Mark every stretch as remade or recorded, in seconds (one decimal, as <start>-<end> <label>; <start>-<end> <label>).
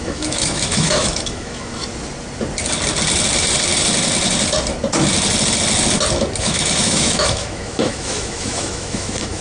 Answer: 0.0-1.8 remade; 1.8-6.4 recorded; 6.4-9.4 remade